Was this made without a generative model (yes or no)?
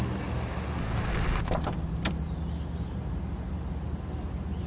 yes